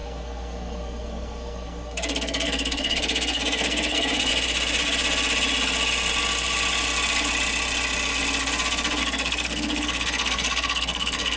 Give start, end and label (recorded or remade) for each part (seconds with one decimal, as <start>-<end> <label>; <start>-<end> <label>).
0.0-4.3 remade; 4.3-9.0 recorded; 9.0-11.4 remade